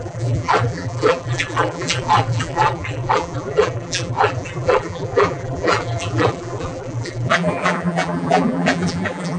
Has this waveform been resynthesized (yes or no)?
yes